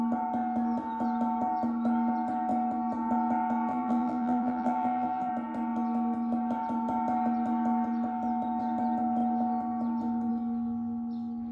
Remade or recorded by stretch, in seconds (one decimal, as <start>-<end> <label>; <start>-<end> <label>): 0.0-3.7 recorded; 3.7-5.3 remade; 5.3-11.5 recorded